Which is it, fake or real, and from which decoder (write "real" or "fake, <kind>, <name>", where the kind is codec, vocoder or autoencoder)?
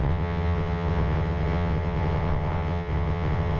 fake, vocoder, WaveNeXt